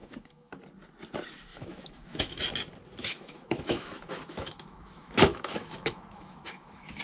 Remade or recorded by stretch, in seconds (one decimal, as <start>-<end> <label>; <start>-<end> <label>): 0.0-0.5 remade; 0.5-1.5 recorded; 1.5-2.4 remade; 2.4-3.0 recorded; 3.0-7.0 remade

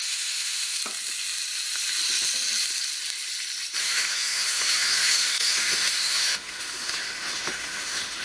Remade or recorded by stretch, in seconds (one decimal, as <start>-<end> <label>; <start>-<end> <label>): 0.0-0.8 remade; 0.8-3.8 recorded; 3.8-8.2 remade